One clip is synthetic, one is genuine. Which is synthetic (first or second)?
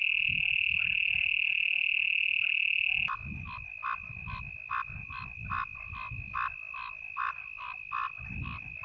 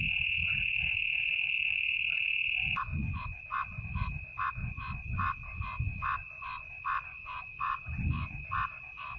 second